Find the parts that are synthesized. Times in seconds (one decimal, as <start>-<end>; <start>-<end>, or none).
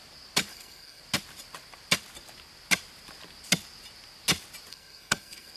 0.5-1.0; 4.7-5.6